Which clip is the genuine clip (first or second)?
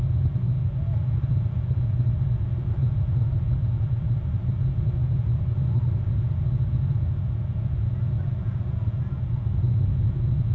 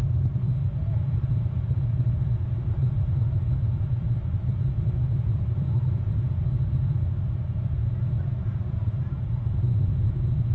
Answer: first